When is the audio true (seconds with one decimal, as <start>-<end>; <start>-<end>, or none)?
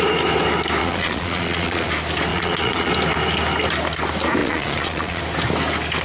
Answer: 0.0-0.8; 1.9-2.3; 2.9-4.4; 5.2-6.0